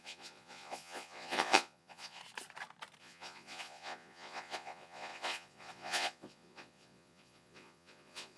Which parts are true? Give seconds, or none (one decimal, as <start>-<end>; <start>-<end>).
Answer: 2.2-3.0